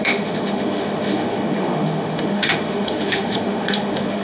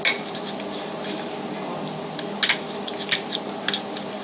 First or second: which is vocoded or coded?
first